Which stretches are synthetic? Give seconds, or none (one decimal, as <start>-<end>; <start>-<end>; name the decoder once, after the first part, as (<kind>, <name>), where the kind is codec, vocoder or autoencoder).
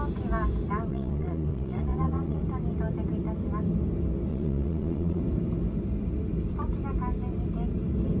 0.9-2.4 (vocoder, Vocos); 4.3-5.2